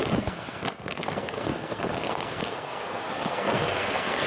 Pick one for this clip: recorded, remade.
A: remade